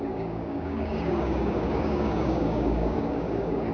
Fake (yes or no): yes